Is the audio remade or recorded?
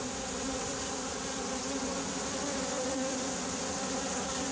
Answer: recorded